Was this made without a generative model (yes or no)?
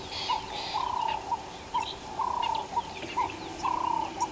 no